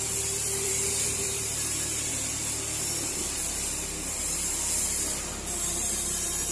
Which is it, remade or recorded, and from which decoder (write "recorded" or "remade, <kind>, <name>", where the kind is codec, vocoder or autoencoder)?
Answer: remade, vocoder, BigVGAN v2